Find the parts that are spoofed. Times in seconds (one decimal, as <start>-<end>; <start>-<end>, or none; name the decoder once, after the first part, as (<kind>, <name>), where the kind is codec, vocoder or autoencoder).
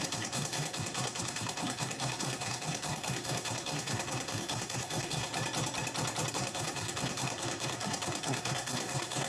0.0-5.3 (codec, SNAC); 6.3-9.3